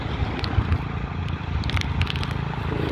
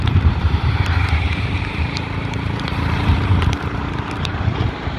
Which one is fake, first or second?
second